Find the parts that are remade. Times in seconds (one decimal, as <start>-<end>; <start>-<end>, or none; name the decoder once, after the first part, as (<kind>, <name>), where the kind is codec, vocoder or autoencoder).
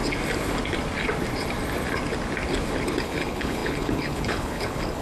3.0-5.0 (codec, HILCodec)